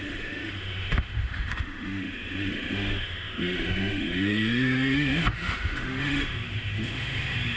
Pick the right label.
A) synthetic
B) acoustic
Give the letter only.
A